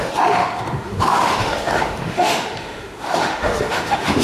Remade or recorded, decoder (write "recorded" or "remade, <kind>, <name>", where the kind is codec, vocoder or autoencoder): remade, autoencoder, DAC-VAE